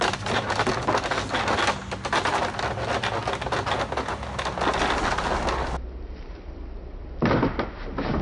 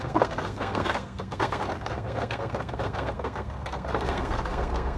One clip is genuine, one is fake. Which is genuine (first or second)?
first